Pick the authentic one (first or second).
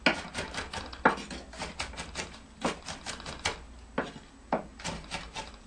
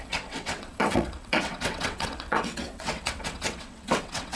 first